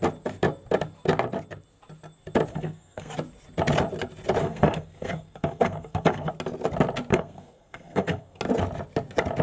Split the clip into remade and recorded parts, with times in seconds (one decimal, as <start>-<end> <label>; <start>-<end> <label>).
0.0-2.5 recorded; 2.5-3.1 remade; 3.1-4.4 recorded; 4.4-6.3 remade; 6.3-7.1 recorded; 7.1-8.4 remade; 8.4-9.4 recorded